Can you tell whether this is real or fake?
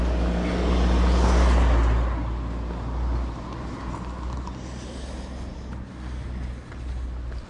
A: real